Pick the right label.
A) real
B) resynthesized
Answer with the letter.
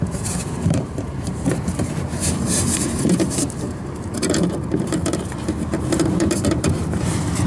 B